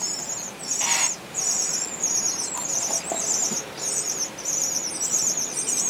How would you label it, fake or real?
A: fake